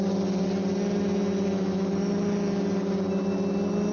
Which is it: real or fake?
real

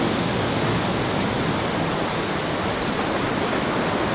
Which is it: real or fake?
real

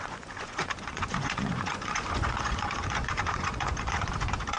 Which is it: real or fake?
fake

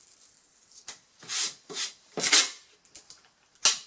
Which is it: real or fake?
real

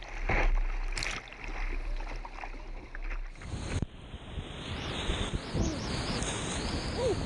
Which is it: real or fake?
real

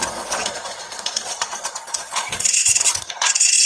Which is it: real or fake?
fake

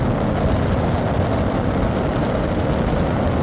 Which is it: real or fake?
real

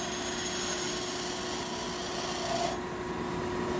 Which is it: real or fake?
real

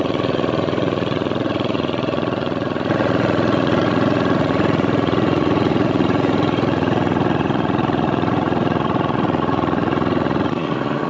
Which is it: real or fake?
fake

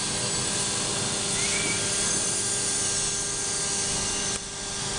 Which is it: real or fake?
real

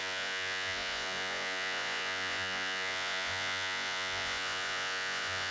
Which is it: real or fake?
fake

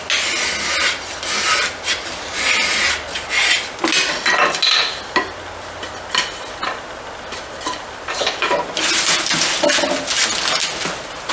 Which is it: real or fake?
real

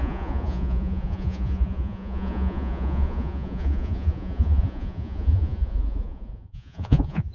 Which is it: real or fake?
fake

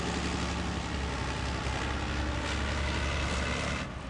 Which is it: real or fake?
real